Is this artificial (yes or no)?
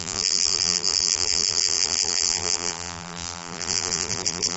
yes